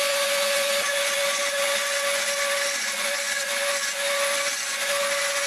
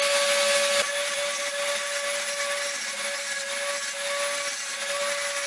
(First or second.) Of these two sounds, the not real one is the first